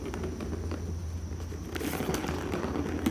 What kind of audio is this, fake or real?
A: real